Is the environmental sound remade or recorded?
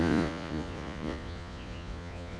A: remade